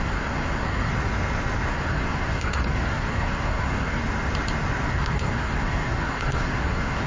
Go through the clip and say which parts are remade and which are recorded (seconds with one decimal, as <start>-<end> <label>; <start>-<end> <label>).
0.0-0.9 remade; 0.9-1.7 recorded; 1.7-4.0 remade; 4.0-4.9 recorded; 4.9-7.1 remade